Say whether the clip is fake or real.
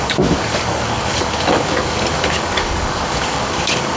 fake